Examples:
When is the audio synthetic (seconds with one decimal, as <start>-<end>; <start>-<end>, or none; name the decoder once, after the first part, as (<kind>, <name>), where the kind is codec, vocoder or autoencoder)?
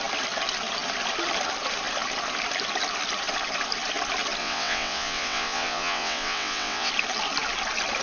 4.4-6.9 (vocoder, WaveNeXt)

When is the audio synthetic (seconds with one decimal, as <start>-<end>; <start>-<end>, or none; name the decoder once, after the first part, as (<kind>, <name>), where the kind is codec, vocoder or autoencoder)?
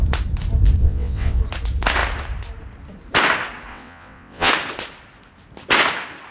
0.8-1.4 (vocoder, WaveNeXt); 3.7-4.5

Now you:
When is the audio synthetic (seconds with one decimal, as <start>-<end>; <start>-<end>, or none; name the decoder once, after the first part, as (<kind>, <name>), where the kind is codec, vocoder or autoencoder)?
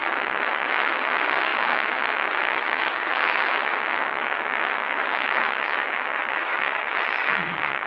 0.0-7.9 (vocoder, WaveNeXt)